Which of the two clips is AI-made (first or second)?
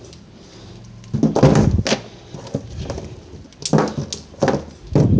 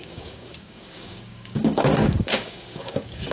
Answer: second